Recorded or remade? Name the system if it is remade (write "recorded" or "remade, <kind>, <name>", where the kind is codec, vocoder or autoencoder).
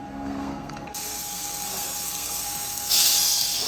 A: remade, codec, SNAC